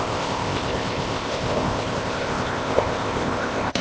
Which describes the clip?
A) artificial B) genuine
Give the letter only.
A